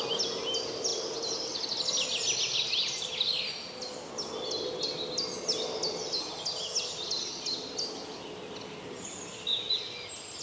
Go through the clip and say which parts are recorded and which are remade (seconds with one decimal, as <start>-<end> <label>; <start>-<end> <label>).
0.0-10.4 recorded